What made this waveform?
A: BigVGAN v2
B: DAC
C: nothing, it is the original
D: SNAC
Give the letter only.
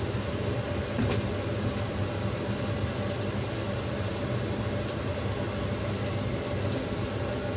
C